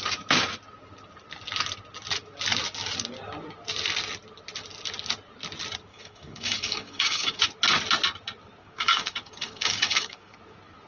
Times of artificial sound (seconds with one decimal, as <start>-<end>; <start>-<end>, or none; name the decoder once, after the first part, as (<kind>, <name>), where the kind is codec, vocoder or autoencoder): 5.9-7.4 (codec, DAC); 8.6-10.4